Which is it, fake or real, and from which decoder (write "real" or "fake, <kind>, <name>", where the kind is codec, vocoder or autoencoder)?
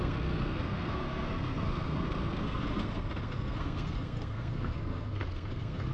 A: fake, codec, SNAC